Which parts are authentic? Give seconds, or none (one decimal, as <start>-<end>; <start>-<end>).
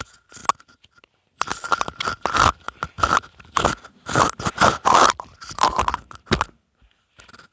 0.0-7.5